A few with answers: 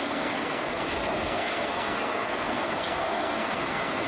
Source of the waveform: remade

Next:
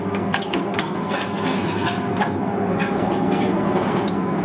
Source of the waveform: remade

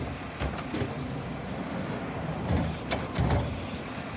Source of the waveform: recorded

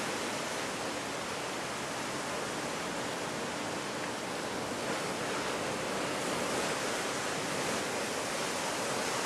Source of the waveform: recorded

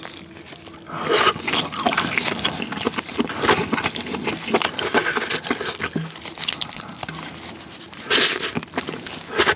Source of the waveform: recorded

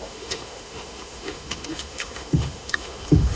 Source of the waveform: remade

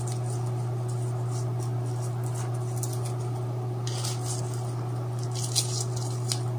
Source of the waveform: recorded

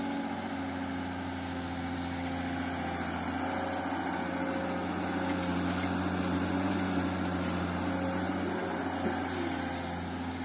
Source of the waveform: recorded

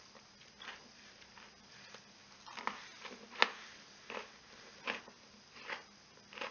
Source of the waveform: recorded